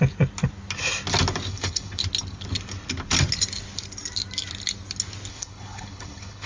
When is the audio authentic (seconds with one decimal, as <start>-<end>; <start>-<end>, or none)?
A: 0.0-1.5; 2.0-5.3